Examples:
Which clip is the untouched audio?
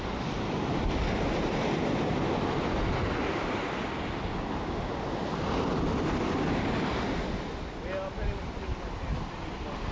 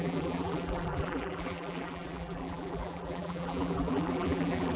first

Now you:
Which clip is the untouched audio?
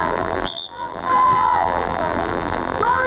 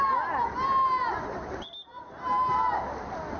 second